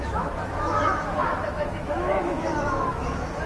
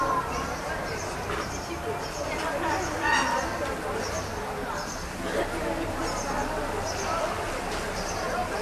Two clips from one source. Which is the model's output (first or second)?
first